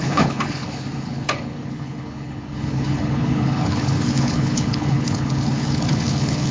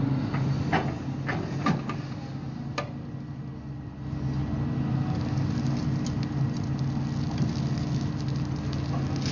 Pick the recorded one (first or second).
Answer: second